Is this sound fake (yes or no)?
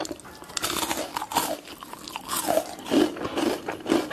no